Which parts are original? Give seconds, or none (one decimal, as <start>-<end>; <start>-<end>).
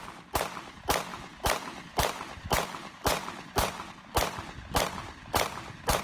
0.0-1.1; 3.9-5.2